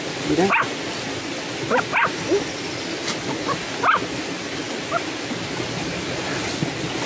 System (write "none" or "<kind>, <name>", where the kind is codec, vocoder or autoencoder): none